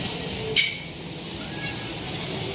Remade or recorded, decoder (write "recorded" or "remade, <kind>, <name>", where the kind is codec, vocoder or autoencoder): recorded